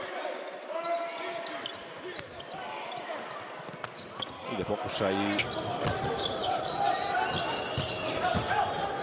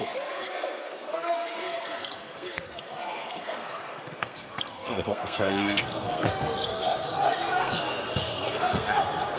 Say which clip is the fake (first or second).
second